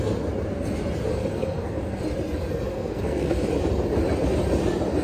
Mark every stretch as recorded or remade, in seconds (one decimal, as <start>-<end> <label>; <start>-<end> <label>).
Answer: 0.0-1.2 recorded; 1.2-2.0 remade; 2.0-2.7 recorded; 2.7-3.5 remade; 3.5-5.0 recorded